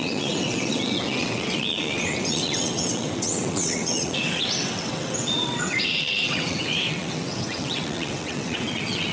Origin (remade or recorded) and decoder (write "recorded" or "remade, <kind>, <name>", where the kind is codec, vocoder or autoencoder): remade, vocoder, WaveNeXt